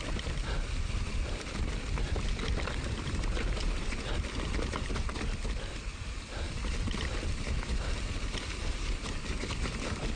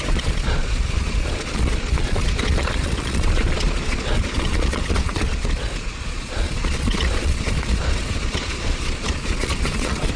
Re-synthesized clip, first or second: second